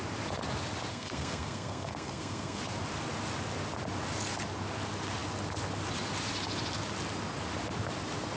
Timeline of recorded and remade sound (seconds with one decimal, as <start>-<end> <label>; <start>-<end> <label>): 0.0-0.9 recorded; 0.9-2.6 remade; 2.6-8.4 recorded